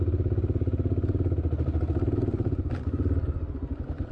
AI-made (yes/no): no